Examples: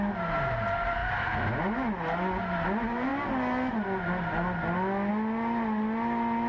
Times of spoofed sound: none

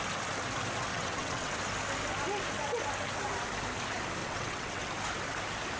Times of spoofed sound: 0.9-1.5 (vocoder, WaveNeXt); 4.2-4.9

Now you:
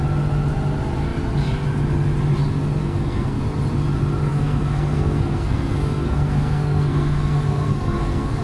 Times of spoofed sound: 2.8-3.4 (codec, SNAC); 4.3-8.4

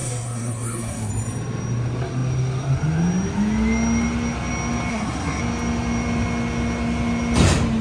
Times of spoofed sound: 0.0-1.1 (codec, SNAC); 4.9-5.4

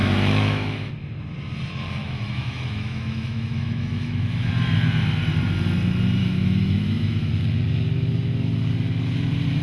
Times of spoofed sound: 0.0-0.9 (autoencoder, DAC-VAE); 2.0-4.5; 6.2-7.3

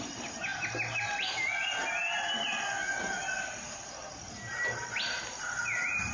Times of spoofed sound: none

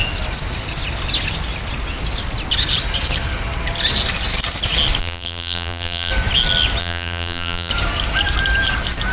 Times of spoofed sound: 5.0-6.1 (vocoder, BigVGAN v2); 6.8-7.7

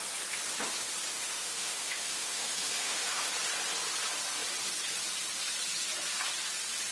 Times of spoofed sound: 1.1-3.3 (autoencoder, DAC-VAE)